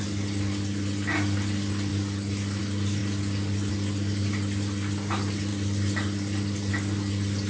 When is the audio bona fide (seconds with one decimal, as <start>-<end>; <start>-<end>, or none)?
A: 0.0-7.5